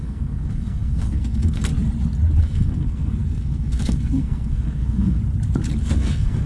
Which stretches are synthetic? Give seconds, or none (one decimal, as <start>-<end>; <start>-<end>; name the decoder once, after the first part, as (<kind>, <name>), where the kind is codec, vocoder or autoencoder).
0.0-1.7 (codec, SNAC); 2.4-5.2; 5.8-6.5